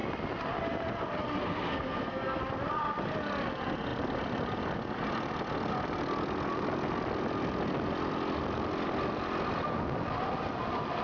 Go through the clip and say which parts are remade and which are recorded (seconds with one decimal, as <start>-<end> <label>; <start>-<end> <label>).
0.0-1.4 recorded; 1.4-2.4 remade; 2.4-11.0 recorded